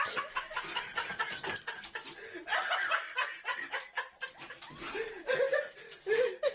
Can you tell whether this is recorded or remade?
recorded